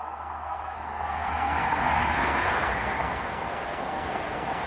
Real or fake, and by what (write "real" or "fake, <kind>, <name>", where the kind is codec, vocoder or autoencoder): fake, codec, SNAC